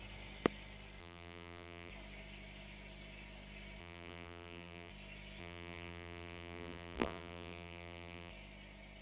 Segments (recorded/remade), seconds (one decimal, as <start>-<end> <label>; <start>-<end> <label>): 0.0-1.0 recorded; 1.0-1.9 remade; 1.9-3.8 recorded; 3.8-4.9 remade; 4.9-5.4 recorded; 5.4-8.3 remade; 8.3-9.0 recorded

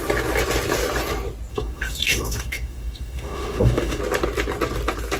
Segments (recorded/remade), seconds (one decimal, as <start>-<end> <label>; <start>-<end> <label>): 0.0-1.5 recorded; 1.5-4.0 remade; 4.0-5.2 recorded

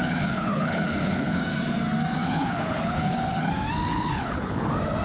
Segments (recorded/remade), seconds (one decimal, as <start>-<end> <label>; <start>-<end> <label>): 0.0-1.4 remade; 1.4-2.2 recorded; 2.2-3.5 remade; 3.5-3.9 recorded; 3.9-4.6 remade; 4.6-5.0 recorded

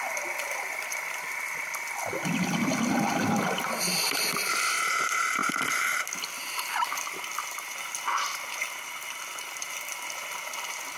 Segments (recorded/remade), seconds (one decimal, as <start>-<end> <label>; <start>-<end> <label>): 0.0-7.3 recorded; 7.3-9.7 remade; 9.7-11.0 recorded

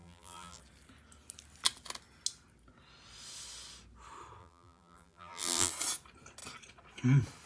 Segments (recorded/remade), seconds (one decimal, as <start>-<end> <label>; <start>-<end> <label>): 0.0-0.6 remade; 0.6-4.4 recorded; 4.4-5.7 remade; 5.7-7.5 recorded

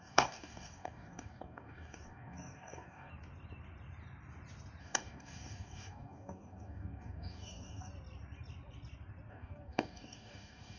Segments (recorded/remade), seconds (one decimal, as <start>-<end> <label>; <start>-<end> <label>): 0.0-3.1 remade; 3.1-4.8 recorded; 4.8-7.9 remade; 7.9-9.3 recorded; 9.3-10.8 remade

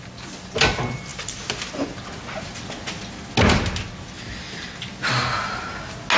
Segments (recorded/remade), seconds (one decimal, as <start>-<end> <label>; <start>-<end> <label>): 0.0-6.2 recorded